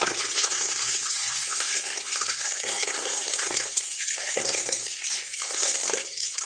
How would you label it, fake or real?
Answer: fake